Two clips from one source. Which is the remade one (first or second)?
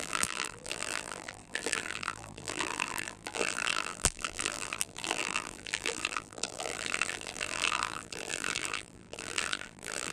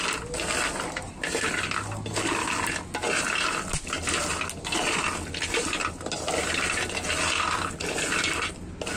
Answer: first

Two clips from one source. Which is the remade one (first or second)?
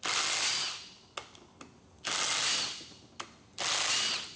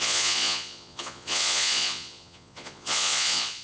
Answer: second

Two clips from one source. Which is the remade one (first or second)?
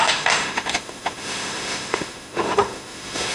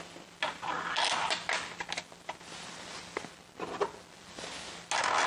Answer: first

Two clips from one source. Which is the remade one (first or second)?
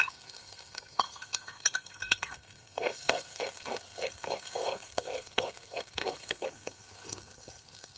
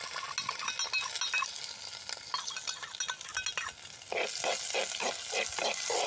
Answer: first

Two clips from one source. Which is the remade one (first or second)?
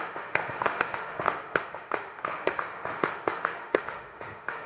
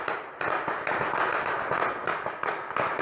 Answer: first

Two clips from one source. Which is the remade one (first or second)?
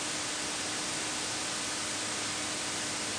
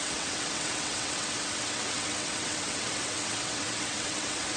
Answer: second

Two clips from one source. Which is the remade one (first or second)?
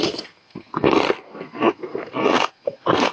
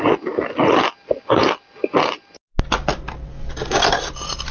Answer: first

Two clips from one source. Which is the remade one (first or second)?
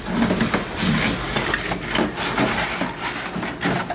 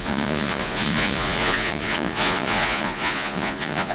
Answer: second